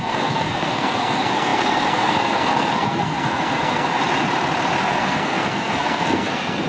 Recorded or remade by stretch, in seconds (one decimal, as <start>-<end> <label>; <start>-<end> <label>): 0.0-4.0 remade; 4.0-4.8 recorded; 4.8-6.7 remade

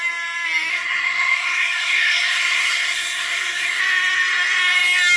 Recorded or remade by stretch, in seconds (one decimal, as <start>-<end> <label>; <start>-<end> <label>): 0.0-0.7 recorded; 0.7-3.8 remade; 3.8-5.2 recorded

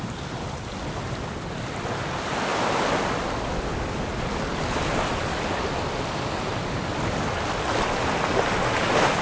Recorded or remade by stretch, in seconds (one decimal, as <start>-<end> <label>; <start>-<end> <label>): 0.0-9.2 recorded

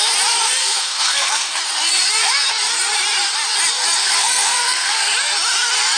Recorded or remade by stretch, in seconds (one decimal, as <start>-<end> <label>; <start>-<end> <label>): 0.0-0.6 recorded; 0.6-1.6 remade; 1.6-4.0 recorded; 4.0-5.1 remade; 5.1-6.0 recorded